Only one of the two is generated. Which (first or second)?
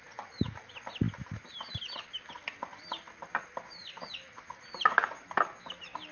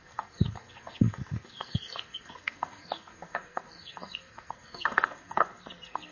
second